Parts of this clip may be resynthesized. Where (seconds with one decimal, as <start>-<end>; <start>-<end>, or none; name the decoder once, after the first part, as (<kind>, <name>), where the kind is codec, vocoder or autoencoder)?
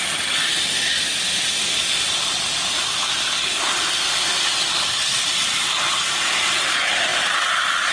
none